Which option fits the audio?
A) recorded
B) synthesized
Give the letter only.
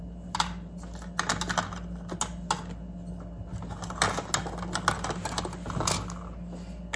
A